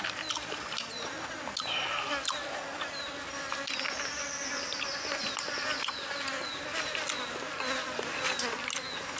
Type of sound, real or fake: real